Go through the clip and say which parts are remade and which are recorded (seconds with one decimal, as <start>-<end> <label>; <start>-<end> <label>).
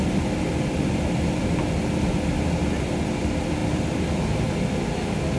0.0-5.4 recorded